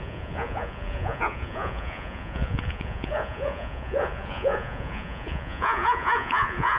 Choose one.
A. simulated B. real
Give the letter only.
A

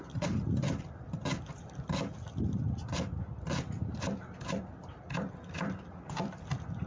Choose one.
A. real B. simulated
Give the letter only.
A